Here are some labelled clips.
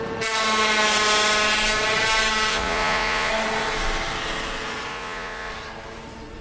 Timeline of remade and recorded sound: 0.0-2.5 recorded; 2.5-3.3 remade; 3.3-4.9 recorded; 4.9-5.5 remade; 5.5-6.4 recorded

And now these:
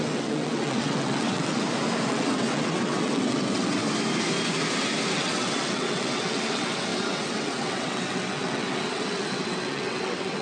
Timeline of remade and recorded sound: 0.0-1.6 remade; 1.6-2.1 recorded; 2.1-3.8 remade; 3.8-5.1 recorded; 5.1-10.4 remade

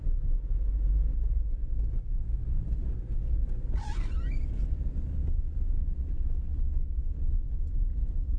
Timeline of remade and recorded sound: 0.0-6.1 remade; 6.1-6.9 recorded; 6.9-8.4 remade

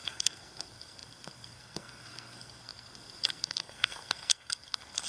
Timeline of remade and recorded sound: 0.0-5.1 remade